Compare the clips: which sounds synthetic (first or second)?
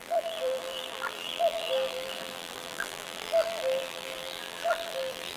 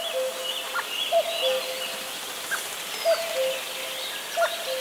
first